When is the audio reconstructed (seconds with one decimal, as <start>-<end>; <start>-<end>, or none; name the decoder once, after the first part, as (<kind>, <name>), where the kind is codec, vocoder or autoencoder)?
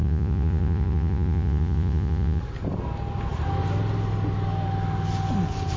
0.0-2.4 (vocoder, Vocos)